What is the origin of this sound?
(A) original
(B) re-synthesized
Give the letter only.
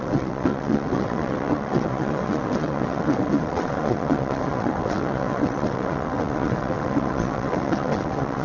B